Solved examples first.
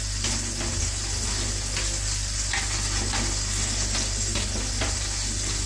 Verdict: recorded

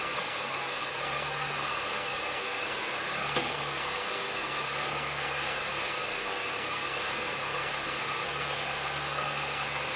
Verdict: remade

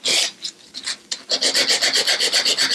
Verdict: recorded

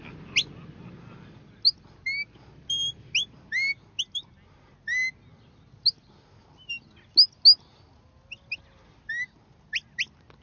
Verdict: recorded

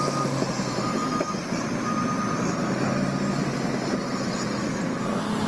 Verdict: recorded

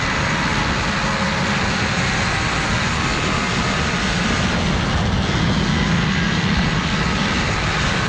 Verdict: recorded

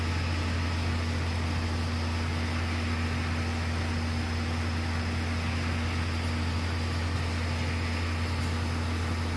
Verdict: recorded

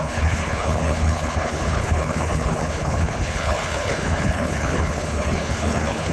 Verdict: remade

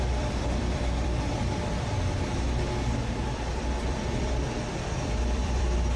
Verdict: remade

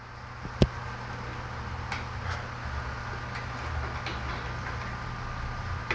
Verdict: recorded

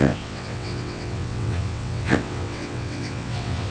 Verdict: remade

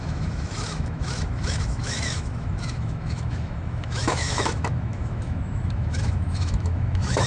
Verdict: remade